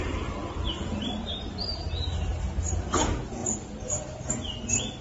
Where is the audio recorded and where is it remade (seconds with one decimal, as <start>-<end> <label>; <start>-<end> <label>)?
0.0-0.4 recorded; 0.4-1.6 remade; 1.6-3.4 recorded; 3.4-4.3 remade; 4.3-5.0 recorded